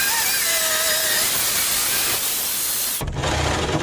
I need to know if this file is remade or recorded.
recorded